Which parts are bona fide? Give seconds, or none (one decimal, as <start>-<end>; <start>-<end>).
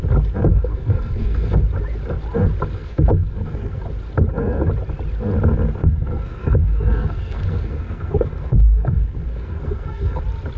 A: 0.0-0.5; 1.6-2.8; 3.8-5.8; 10.2-10.6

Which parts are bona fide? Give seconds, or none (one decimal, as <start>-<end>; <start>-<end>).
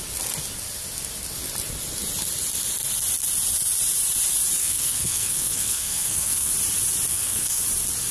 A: 0.0-4.6; 6.5-7.1; 7.6-8.1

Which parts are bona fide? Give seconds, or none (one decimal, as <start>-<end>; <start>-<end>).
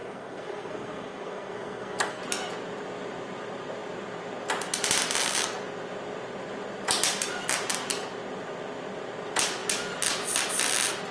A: 2.2-11.1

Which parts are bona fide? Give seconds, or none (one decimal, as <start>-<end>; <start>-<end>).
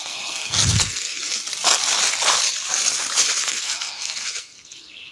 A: 1.4-3.4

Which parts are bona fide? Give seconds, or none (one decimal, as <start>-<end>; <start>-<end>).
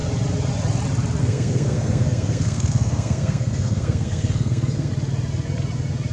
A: 0.0-1.2; 4.9-6.1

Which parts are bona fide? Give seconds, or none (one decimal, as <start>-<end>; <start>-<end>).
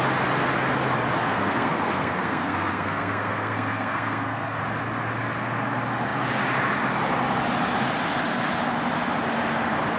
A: 0.0-1.2; 4.6-10.0